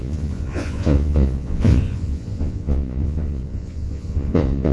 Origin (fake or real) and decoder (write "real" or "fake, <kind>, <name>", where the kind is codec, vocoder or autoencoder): fake, vocoder, Vocos